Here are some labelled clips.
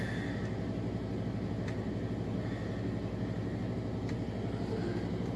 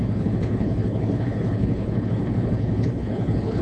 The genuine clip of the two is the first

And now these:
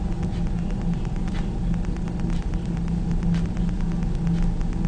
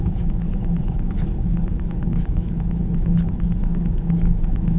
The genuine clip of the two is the first